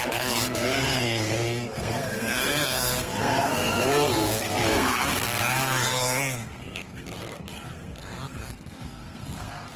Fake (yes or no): yes